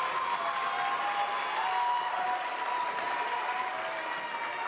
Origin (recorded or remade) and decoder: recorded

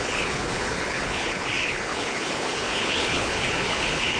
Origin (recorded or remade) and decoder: remade, codec, HILCodec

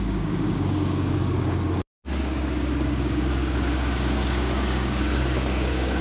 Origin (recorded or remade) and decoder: remade, codec, DAC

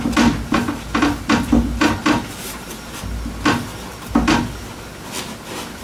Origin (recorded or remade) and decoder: recorded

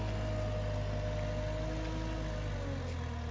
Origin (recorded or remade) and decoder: recorded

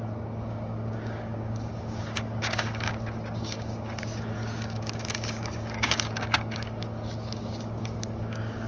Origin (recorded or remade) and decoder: remade, codec, DAC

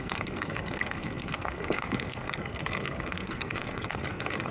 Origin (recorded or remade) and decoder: remade, codec, SNAC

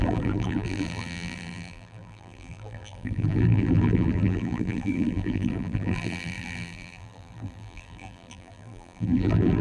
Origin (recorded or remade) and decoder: remade, vocoder, BigVGAN v2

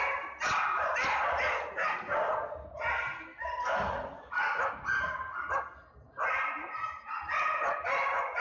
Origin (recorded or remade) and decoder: recorded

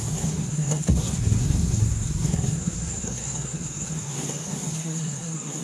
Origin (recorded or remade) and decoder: remade, codec, SNAC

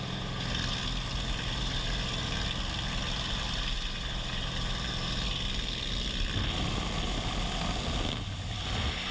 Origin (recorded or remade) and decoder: recorded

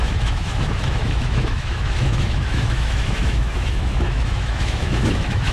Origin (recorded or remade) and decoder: remade, autoencoder, DAC-VAE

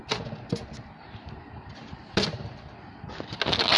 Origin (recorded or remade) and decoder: recorded